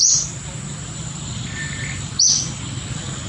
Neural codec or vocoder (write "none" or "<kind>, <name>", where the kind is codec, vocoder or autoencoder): none